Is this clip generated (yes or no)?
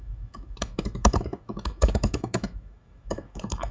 yes